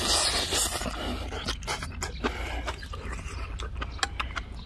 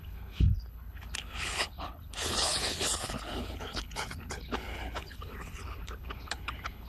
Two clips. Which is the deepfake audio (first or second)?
second